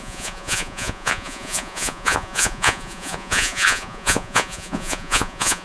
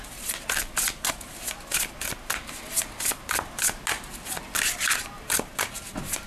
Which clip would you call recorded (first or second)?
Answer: second